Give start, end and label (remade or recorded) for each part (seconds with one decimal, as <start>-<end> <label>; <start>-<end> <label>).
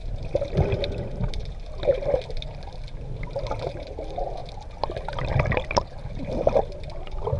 0.0-7.4 recorded